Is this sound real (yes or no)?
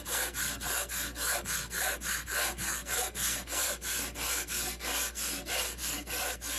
no